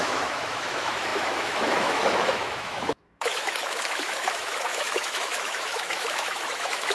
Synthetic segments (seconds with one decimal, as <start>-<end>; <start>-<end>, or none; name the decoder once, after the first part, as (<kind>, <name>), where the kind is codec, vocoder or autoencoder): 0.0-6.9 (autoencoder, DAC-VAE)